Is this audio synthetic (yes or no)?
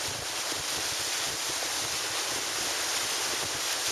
no